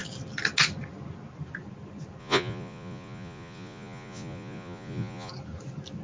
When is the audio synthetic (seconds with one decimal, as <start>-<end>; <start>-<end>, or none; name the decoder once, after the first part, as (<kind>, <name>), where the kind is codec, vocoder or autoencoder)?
2.2-5.3 (vocoder, Vocos)